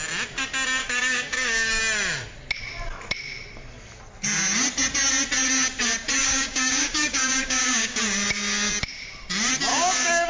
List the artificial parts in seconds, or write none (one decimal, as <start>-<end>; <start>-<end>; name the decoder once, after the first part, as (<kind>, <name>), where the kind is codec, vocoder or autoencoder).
0.8-1.8 (codec, DAC); 6.2-8.0; 9.7-10.3